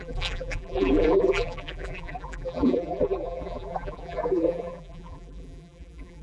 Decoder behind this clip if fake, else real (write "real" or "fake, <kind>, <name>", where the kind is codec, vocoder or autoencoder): fake, vocoder, BigVGAN v2